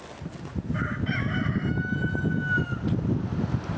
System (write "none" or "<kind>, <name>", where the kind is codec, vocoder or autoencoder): none